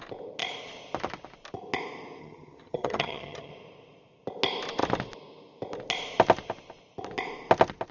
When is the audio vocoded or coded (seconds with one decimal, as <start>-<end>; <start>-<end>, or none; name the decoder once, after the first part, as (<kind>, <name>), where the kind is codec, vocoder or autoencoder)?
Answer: 2.2-3.5 (vocoder, HiFi-GAN)